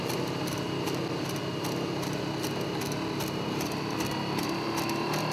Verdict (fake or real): real